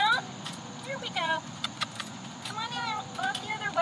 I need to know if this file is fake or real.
fake